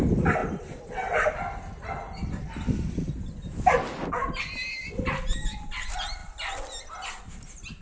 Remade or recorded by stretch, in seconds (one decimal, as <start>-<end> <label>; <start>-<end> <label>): 0.0-7.8 recorded